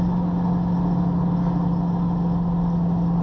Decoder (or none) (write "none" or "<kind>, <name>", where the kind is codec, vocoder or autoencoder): none